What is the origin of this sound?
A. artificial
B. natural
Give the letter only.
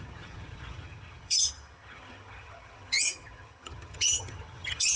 A